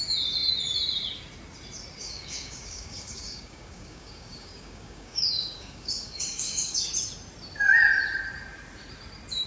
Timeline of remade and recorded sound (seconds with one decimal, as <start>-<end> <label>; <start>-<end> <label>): 0.0-2.0 recorded; 2.0-6.9 remade; 6.9-9.5 recorded